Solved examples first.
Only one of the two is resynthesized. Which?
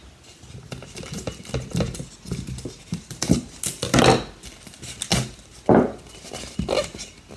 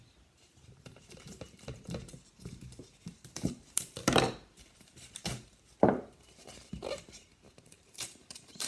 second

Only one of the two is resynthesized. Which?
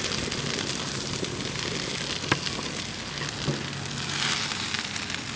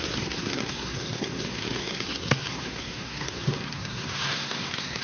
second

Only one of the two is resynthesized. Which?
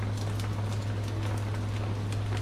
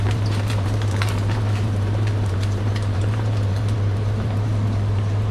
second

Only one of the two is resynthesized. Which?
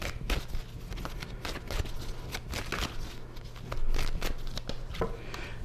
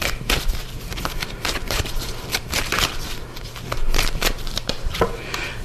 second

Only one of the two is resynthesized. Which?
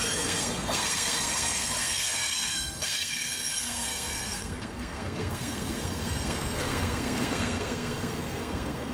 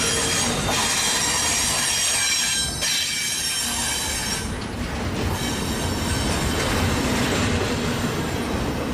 first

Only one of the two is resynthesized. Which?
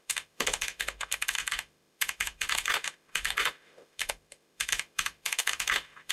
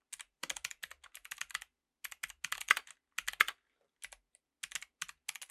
first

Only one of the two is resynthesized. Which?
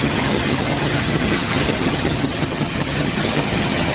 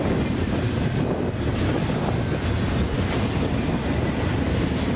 first